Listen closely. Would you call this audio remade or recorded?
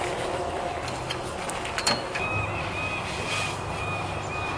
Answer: recorded